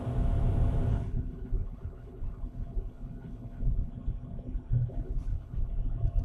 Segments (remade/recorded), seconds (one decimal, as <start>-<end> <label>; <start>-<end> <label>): 0.0-0.9 recorded; 0.9-3.9 remade; 3.9-4.9 recorded; 4.9-5.7 remade; 5.7-6.2 recorded